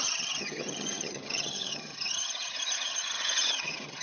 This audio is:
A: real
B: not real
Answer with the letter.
B